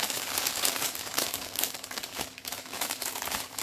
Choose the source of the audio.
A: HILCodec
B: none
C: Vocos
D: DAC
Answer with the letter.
D